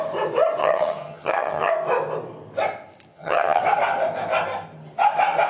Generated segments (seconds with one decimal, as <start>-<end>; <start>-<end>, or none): 0.6-1.7; 3.1-3.6